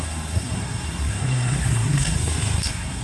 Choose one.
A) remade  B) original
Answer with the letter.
A